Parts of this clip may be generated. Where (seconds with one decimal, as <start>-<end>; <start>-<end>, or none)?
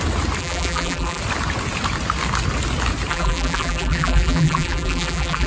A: 0.4-1.2; 3.1-5.5